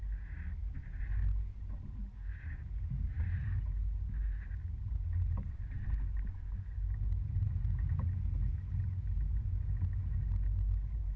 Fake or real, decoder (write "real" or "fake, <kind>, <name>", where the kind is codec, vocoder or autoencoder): real